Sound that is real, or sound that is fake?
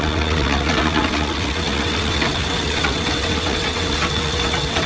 fake